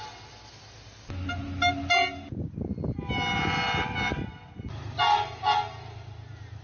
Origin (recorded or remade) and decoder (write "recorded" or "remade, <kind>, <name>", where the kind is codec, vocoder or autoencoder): recorded